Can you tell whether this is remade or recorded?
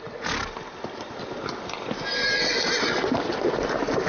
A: recorded